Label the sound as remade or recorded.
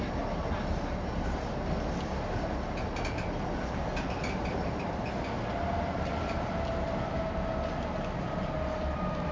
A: recorded